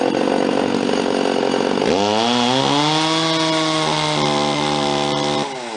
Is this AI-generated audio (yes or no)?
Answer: no